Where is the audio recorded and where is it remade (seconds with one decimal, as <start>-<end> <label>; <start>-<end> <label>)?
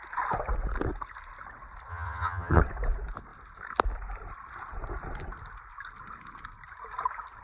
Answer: 0.0-1.9 recorded; 1.9-2.6 remade; 2.6-7.4 recorded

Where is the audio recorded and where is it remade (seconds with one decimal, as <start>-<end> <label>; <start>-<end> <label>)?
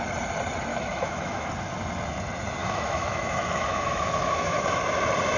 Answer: 0.0-0.7 recorded; 0.7-1.5 remade; 1.5-2.6 recorded; 2.6-4.8 remade; 4.8-5.4 recorded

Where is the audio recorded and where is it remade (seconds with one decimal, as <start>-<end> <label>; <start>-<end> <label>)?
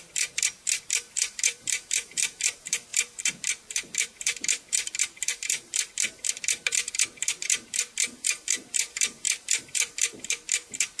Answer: 0.0-11.0 remade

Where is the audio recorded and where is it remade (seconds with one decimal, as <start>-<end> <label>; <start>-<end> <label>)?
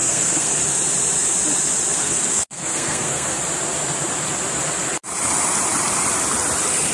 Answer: 0.0-0.5 remade; 0.5-1.9 recorded; 1.9-3.4 remade; 3.4-6.9 recorded